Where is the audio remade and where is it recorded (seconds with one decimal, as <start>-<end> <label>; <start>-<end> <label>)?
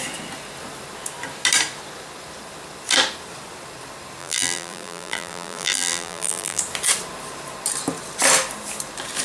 0.0-4.2 recorded; 4.2-6.6 remade; 6.6-9.2 recorded